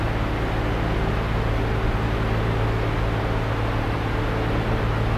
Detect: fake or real real